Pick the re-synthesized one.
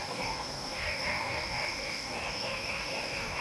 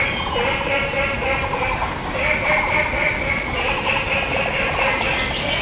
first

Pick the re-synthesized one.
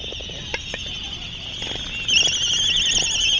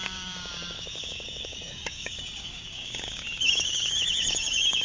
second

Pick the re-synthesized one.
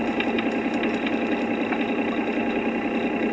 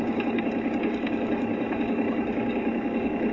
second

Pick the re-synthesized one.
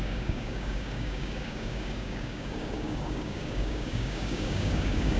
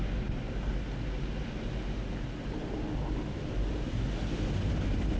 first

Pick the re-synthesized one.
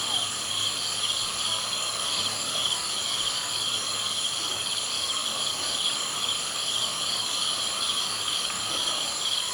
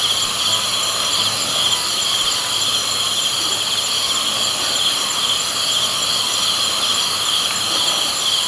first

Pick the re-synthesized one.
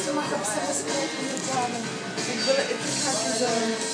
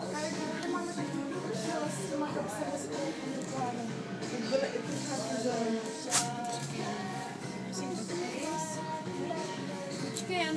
second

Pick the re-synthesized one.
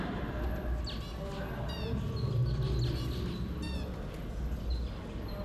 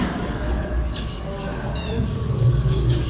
second